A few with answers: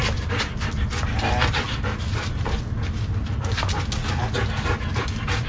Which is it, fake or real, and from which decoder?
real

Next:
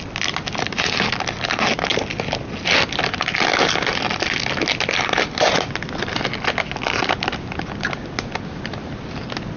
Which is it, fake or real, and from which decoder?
real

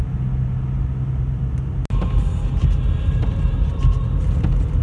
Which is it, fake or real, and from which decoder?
real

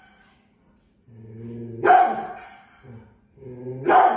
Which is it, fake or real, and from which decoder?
real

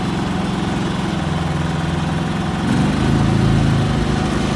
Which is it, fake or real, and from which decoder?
real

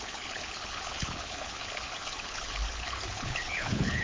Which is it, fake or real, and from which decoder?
fake, codec, HILCodec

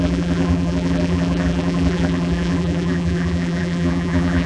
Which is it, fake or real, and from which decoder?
fake, vocoder, BigVGAN v2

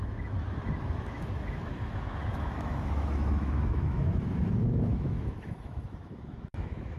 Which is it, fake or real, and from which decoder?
fake, autoencoder, DAC-VAE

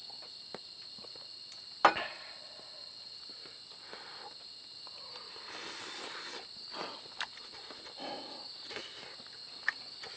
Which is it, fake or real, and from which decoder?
real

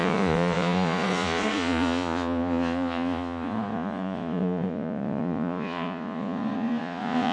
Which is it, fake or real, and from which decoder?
fake, vocoder, Vocos